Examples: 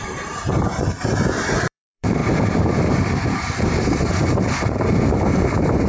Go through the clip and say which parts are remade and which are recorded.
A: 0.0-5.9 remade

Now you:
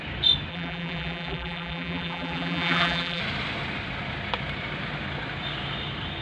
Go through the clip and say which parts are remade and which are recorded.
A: 0.0-0.5 recorded; 0.5-3.2 remade; 3.2-6.2 recorded

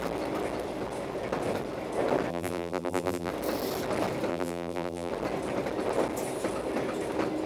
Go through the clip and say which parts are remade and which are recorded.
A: 0.0-2.3 recorded; 2.3-3.3 remade; 3.3-4.3 recorded; 4.3-5.1 remade; 5.1-7.5 recorded

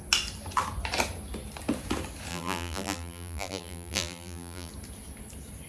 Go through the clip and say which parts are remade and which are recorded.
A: 0.0-2.3 recorded; 2.3-4.7 remade; 4.7-5.7 recorded

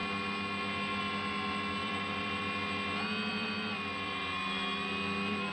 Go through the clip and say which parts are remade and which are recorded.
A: 0.0-1.8 recorded; 1.8-2.4 remade; 2.4-3.3 recorded; 3.3-4.2 remade; 4.2-5.5 recorded

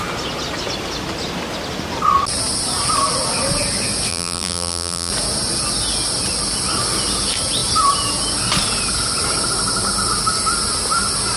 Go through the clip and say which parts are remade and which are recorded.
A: 0.0-4.1 recorded; 4.1-5.1 remade; 5.1-11.4 recorded